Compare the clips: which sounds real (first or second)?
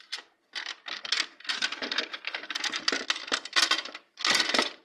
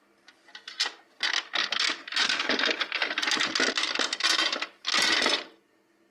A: second